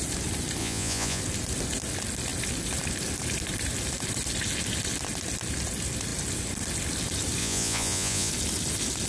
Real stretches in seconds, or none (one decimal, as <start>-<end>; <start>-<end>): 0.0-0.6; 1.2-7.4; 8.3-9.1